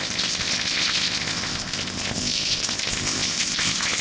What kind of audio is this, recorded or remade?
remade